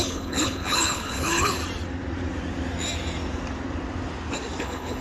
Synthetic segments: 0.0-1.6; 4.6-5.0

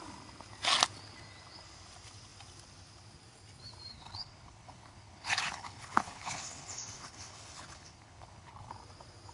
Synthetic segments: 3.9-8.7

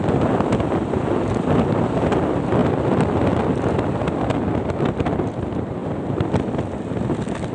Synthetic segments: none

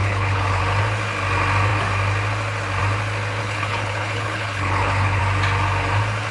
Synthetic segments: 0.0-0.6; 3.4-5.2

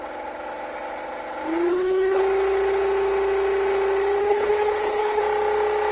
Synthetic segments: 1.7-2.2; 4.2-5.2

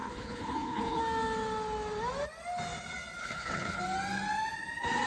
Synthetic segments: 0.0-1.0; 3.2-3.8

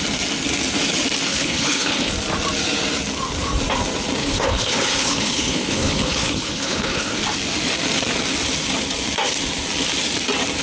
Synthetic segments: 1.3-2.1; 4.2-7.2